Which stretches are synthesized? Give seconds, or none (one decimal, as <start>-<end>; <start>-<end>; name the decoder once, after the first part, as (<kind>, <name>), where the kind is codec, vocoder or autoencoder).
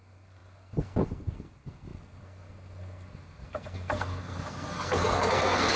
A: 0.0-5.8 (codec, SNAC)